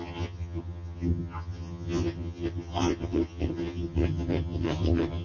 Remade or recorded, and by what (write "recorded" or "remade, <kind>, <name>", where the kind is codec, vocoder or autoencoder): remade, vocoder, HiFi-GAN